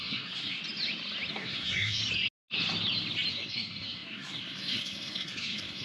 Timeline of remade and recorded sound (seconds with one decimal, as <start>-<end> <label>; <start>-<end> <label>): 0.0-0.6 remade; 0.6-1.3 recorded; 1.3-2.0 remade; 2.0-3.3 recorded; 3.3-5.8 remade